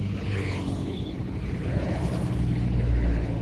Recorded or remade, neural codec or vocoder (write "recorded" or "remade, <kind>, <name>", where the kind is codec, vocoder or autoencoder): remade, codec, HILCodec